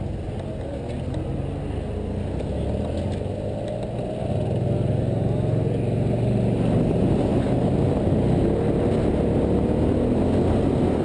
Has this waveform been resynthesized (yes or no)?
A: no